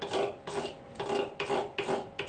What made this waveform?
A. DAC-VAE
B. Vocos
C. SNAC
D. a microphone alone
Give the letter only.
D